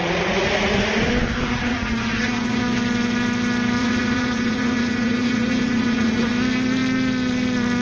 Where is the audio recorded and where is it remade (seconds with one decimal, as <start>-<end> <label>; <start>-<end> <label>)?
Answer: 0.0-1.1 remade; 1.1-1.7 recorded; 1.7-2.6 remade; 2.6-3.8 recorded; 3.8-6.3 remade; 6.3-7.8 recorded